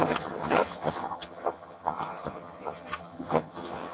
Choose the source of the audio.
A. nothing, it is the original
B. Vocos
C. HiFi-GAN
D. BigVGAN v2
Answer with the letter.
C